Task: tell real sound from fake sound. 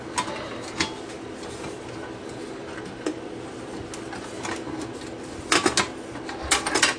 real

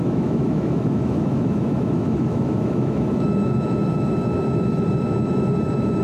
fake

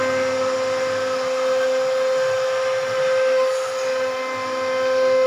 real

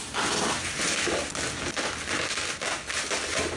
real